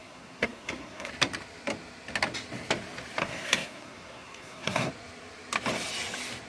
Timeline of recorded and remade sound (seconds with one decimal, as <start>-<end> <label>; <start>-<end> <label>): 0.0-1.1 remade; 1.1-3.2 recorded; 3.2-4.9 remade; 4.9-6.5 recorded